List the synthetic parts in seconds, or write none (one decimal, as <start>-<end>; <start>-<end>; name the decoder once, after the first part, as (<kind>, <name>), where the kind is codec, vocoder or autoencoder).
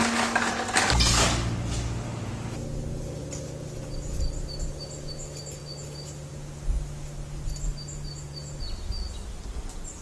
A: none